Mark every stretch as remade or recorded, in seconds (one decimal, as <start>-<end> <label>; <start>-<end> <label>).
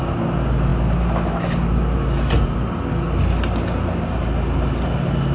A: 0.0-5.3 recorded